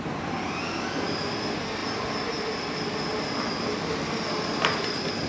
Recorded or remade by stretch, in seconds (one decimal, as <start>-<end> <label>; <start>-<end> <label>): 0.0-5.3 recorded